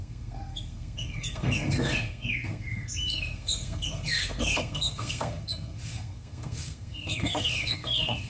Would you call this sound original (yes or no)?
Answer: no